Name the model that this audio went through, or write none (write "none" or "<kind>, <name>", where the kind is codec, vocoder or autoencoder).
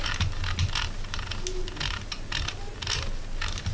none